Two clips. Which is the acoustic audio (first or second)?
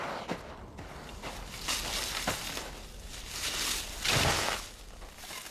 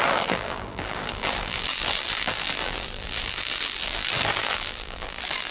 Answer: first